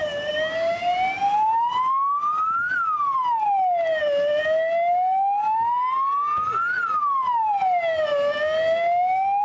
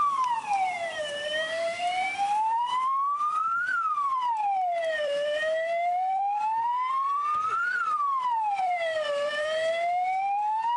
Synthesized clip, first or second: second